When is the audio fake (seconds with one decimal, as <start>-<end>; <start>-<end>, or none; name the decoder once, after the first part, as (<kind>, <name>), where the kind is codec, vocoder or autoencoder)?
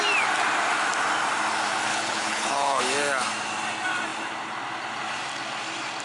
1.9-2.8 (codec, HILCodec)